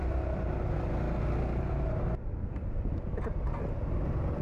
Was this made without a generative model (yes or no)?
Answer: yes